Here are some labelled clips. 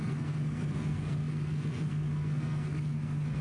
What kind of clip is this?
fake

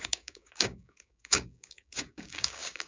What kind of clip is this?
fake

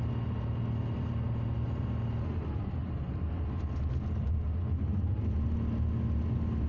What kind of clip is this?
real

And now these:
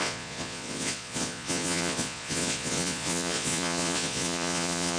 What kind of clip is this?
fake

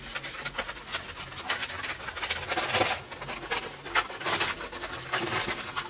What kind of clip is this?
real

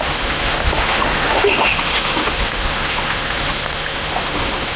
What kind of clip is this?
fake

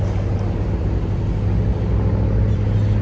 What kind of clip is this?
real